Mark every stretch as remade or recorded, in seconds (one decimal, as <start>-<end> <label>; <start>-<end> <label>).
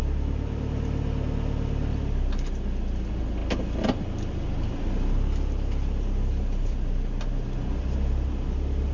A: 0.0-8.9 recorded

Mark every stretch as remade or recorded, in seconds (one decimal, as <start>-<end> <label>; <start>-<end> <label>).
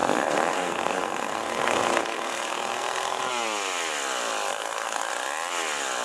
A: 0.0-3.2 remade; 3.2-4.5 recorded; 4.5-5.1 remade; 5.1-6.0 recorded